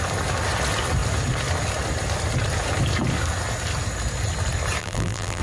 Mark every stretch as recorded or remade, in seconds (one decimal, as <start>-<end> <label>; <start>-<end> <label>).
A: 0.0-4.8 recorded; 4.8-5.4 remade